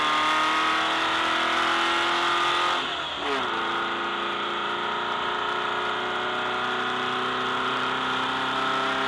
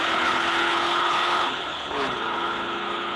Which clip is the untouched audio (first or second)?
first